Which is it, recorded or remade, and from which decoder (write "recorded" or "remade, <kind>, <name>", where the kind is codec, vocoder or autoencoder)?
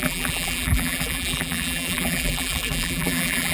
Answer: remade, vocoder, BigVGAN v2